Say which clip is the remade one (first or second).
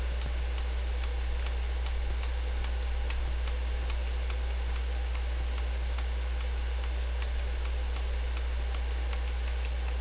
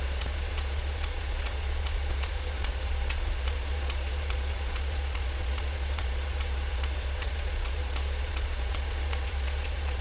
second